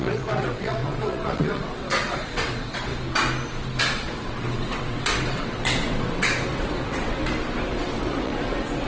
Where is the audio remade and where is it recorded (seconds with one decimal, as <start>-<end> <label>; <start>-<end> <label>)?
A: 0.0-2.9 remade; 2.9-3.8 recorded; 3.8-7.2 remade; 7.2-7.7 recorded; 7.7-8.9 remade